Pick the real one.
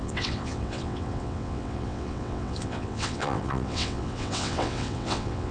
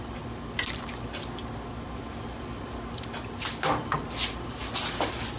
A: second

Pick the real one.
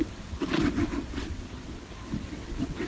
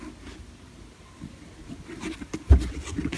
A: second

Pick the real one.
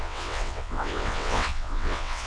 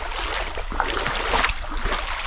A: second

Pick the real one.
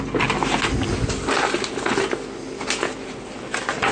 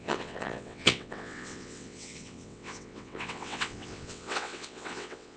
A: first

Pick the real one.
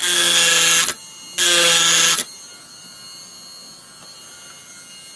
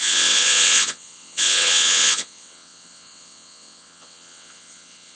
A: first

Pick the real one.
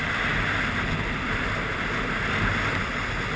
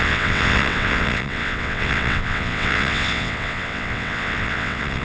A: first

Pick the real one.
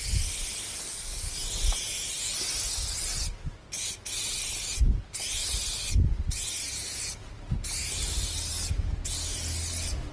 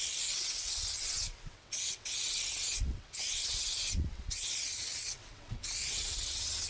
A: first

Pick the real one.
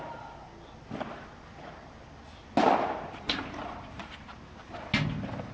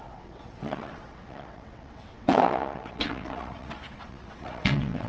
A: first